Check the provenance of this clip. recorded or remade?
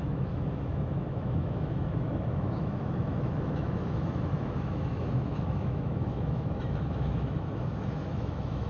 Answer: remade